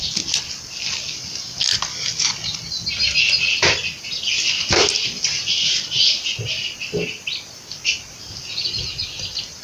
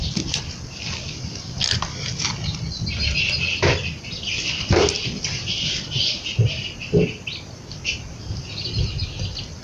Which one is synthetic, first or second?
second